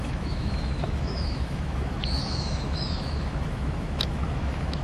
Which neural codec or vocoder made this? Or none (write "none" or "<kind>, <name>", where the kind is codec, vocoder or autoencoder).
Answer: autoencoder, DAC-VAE